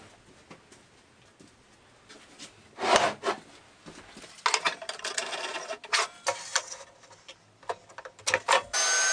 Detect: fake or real real